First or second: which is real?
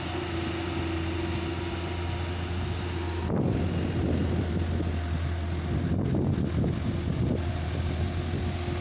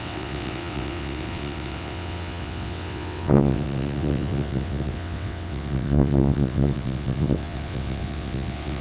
first